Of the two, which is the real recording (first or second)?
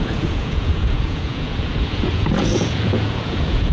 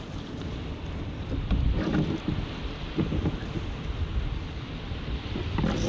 second